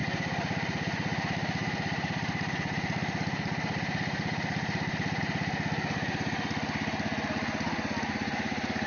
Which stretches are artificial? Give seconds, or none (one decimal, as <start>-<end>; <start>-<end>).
0.0-5.2